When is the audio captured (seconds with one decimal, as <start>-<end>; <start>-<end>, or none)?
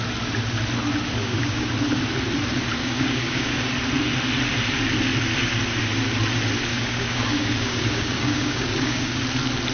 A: 0.0-1.2; 1.7-2.8; 3.7-6.7; 9.2-9.7